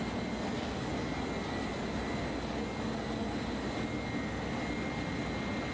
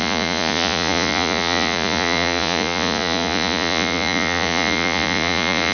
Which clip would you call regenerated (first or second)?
second